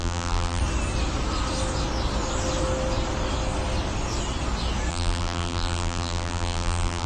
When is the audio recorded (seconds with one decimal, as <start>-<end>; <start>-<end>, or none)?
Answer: 0.6-4.9